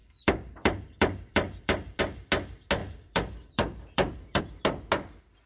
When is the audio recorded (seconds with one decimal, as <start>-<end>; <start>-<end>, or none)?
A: 2.0-2.8; 4.4-5.5